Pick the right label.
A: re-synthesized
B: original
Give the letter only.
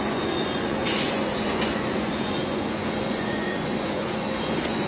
A